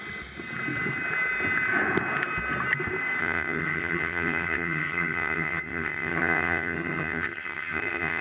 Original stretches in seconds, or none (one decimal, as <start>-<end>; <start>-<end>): 0.0-3.2